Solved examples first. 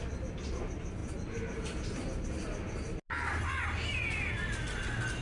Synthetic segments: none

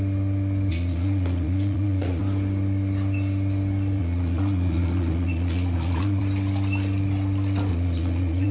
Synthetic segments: 0.7-2.2 (vocoder, Vocos); 4.0-6.2; 7.7-8.5

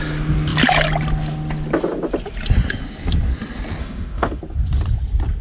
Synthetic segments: 3.8-4.4 (autoencoder, DAC-VAE)

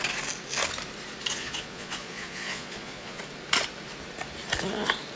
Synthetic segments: 1.3-3.2 (vocoder, Vocos)

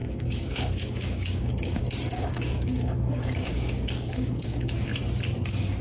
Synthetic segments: 0.0-4.9 (codec, DAC)

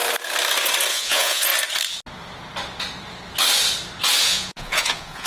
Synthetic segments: 0.9-1.5 (vocoder, Vocos); 4.2-5.3

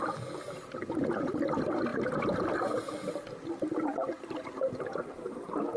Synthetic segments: none

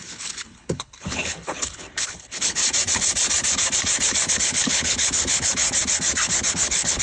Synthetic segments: 0.0-2.6 (codec, HILCodec); 4.3-5.6; 6.5-7.0